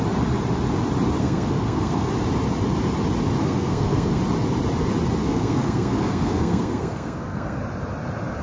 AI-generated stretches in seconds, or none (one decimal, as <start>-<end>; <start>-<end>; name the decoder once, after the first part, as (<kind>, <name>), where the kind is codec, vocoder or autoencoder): 1.2-2.1 (codec, SNAC); 3.4-4.2; 5.2-7.6